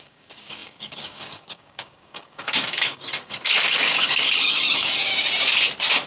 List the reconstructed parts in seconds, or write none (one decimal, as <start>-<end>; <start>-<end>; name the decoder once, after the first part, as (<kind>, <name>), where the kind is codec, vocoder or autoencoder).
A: 0.0-5.1 (codec, DAC)